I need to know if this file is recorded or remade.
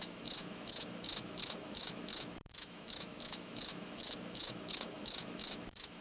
remade